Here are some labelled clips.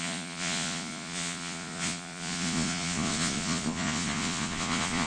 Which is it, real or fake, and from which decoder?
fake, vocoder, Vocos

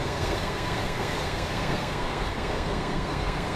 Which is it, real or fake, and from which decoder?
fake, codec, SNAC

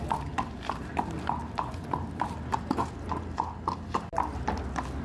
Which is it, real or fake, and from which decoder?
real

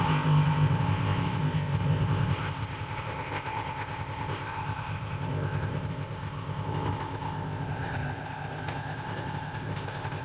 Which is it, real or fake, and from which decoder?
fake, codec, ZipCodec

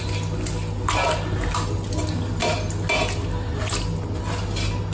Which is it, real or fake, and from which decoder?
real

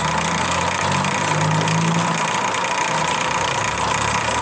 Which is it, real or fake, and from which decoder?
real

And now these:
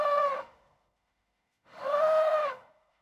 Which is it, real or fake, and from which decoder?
fake, autoencoder, DAC-VAE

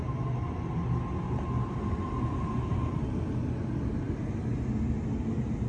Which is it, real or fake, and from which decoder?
real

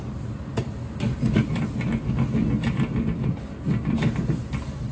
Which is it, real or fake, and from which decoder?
real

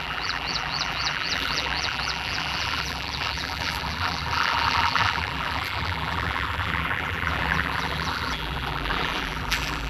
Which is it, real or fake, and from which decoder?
fake, vocoder, BigVGAN v2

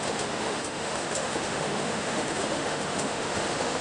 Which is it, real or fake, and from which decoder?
fake, autoencoder, DAC-VAE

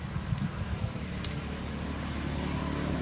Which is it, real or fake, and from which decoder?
real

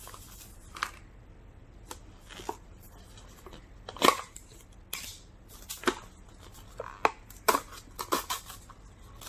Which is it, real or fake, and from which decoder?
real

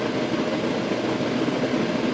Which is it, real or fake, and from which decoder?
real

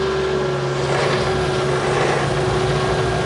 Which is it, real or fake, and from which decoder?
real